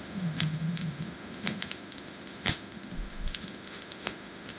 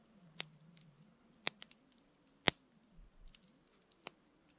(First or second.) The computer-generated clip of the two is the first